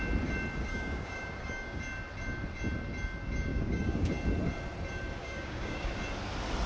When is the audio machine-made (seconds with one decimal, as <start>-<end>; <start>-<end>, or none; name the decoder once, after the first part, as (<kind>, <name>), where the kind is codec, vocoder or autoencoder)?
0.7-1.8 (codec, DAC); 3.5-4.1; 5.2-5.9